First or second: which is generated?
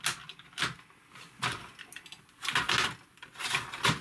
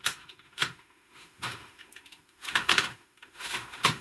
second